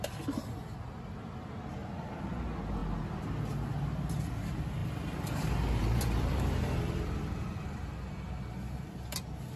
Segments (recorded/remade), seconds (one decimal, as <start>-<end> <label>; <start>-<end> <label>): 0.0-4.8 recorded; 4.8-7.9 remade; 7.9-9.6 recorded